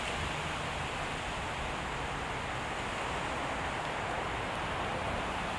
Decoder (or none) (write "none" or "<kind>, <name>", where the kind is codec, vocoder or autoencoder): none